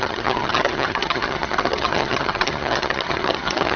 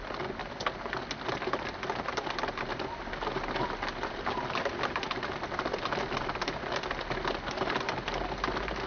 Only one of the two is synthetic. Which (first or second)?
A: first